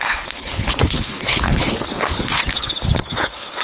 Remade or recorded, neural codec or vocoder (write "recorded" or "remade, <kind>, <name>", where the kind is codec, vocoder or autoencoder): remade, codec, HILCodec